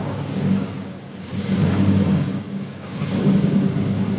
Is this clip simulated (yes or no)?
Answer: yes